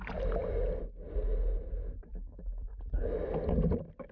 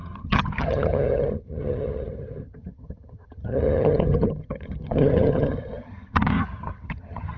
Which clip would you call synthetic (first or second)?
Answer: second